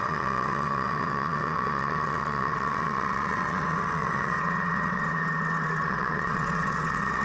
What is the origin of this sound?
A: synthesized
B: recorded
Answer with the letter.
A